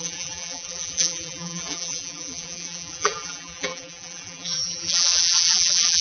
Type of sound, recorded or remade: remade